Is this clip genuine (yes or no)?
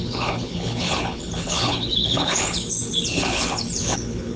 no